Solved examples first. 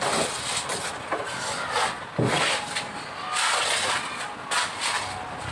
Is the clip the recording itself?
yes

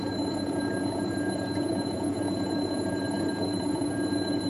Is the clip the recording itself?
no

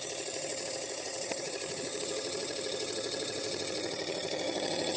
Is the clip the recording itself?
no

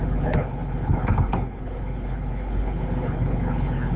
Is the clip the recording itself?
no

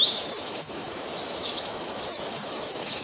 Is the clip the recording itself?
no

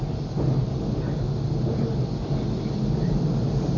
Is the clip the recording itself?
yes